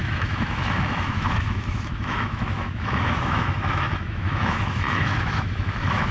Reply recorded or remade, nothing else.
remade